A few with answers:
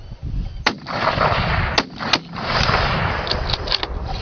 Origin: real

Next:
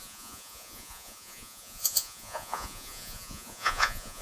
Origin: fake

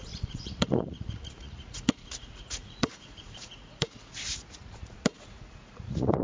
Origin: fake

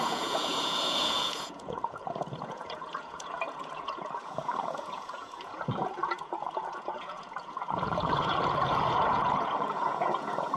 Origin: fake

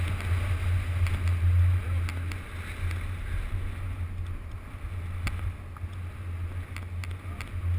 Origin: real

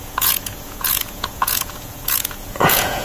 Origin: fake